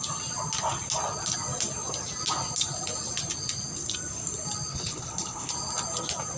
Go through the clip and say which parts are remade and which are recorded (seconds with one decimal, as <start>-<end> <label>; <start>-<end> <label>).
0.0-4.7 recorded; 4.7-5.5 remade; 5.5-6.4 recorded